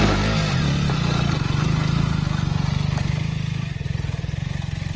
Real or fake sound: real